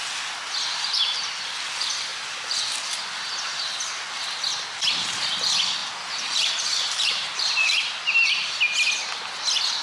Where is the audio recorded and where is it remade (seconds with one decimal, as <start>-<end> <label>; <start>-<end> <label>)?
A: 0.0-2.1 recorded; 2.1-2.6 remade; 2.6-5.8 recorded; 5.8-8.6 remade; 8.6-9.8 recorded